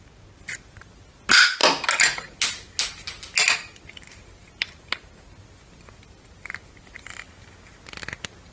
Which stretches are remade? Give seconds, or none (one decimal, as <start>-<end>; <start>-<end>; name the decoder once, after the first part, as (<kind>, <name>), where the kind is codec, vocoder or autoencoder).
none